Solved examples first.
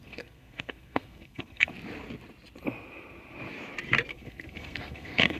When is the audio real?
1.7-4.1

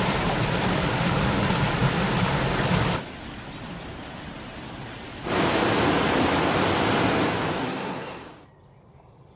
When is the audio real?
0.0-7.6; 8.2-9.4

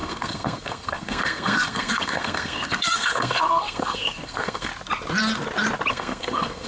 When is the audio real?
4.7-5.9

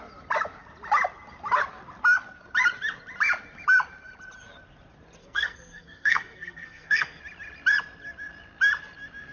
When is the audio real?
0.0-5.2; 7.2-9.3

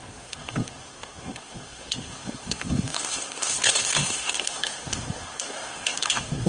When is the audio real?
none